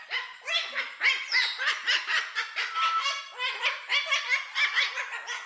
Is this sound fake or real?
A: real